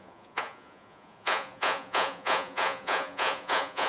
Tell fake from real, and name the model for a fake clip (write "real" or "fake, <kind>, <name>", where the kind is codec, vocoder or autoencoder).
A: fake, vocoder, Vocos